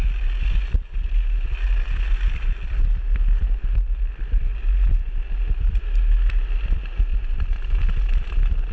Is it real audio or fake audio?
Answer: real